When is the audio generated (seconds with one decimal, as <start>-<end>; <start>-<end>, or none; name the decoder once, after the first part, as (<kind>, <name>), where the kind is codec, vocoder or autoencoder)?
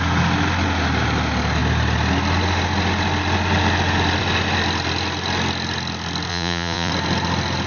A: 6.3-6.9 (vocoder, Vocos)